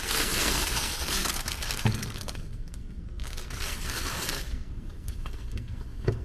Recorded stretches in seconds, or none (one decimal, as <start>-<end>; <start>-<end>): none